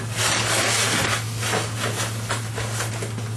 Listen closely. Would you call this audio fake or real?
real